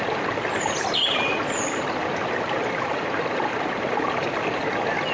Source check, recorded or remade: recorded